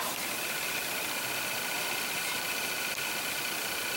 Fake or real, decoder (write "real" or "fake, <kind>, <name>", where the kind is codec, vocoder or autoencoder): real